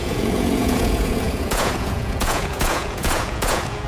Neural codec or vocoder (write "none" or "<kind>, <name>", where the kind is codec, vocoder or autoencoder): vocoder, Vocos